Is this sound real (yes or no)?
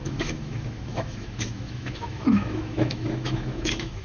no